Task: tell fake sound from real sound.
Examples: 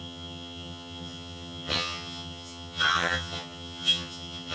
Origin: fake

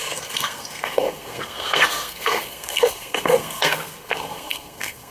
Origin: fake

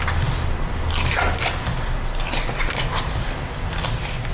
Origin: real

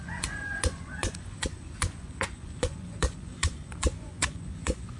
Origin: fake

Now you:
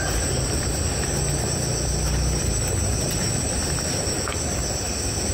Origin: real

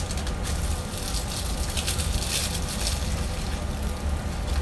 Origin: real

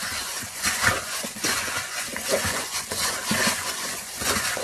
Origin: fake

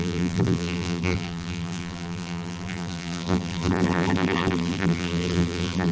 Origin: fake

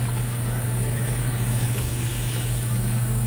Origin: fake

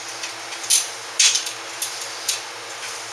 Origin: real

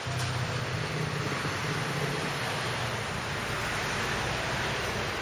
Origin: real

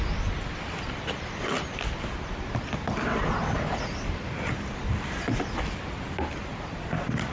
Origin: real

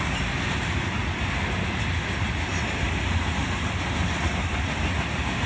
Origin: real